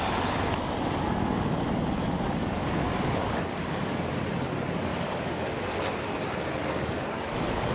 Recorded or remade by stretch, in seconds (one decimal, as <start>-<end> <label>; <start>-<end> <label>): 0.0-2.4 recorded; 2.4-4.1 remade; 4.1-4.9 recorded; 4.9-5.5 remade; 5.5-6.6 recorded; 6.6-7.7 remade